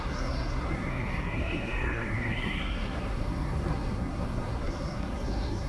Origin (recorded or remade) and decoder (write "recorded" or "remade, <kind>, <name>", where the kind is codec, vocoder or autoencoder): remade, codec, SNAC